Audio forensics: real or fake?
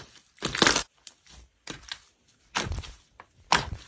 fake